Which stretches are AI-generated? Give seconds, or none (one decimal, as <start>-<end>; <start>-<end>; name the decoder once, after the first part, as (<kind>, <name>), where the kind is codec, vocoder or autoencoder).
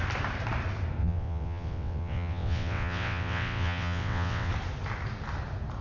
1.0-4.5 (vocoder, WaveNeXt)